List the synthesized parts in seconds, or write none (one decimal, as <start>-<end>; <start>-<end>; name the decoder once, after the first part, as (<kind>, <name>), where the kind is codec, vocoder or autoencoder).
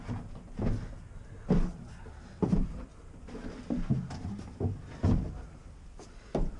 none